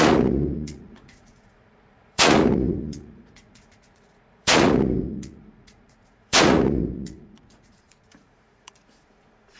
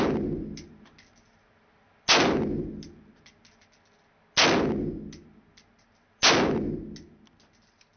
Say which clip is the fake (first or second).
first